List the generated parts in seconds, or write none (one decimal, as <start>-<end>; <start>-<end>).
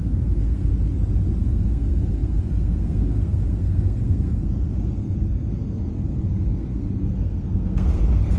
0.0-0.7; 1.4-8.4